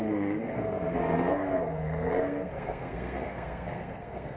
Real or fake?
fake